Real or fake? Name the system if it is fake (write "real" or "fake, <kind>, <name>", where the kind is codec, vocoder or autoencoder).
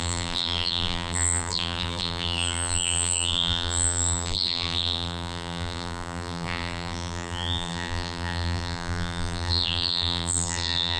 fake, vocoder, BigVGAN v2